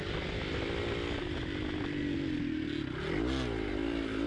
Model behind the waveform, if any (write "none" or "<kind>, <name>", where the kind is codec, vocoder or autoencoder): none